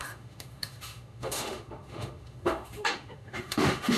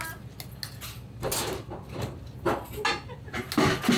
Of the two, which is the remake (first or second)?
first